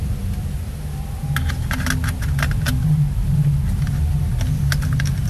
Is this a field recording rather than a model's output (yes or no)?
yes